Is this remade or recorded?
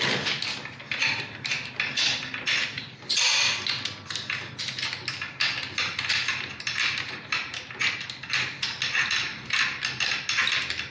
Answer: recorded